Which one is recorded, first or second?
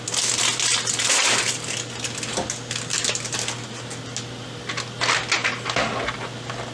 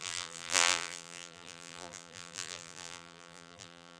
first